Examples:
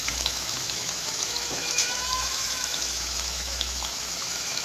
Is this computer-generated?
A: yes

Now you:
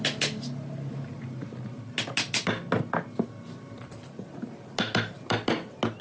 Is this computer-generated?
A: no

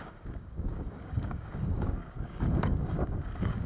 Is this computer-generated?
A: yes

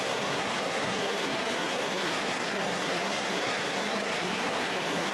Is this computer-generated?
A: yes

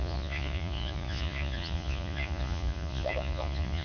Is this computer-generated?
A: yes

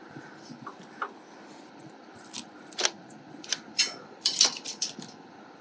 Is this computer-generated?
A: yes